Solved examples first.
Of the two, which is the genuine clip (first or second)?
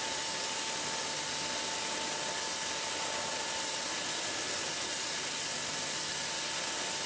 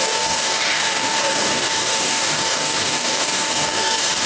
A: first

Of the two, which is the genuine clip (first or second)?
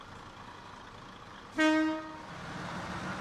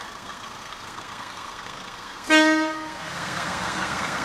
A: first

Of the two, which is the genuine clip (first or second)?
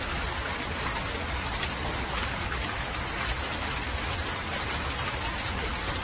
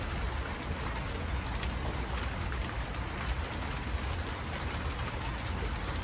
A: second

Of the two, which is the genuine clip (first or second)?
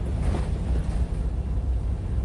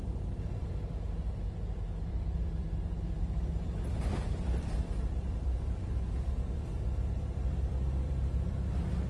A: first